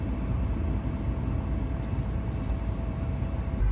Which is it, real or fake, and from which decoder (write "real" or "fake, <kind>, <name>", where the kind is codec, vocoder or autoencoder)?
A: real